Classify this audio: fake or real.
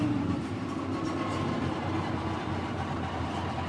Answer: fake